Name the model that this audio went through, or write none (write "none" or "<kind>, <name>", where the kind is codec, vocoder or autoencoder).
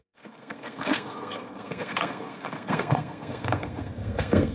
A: codec, SNAC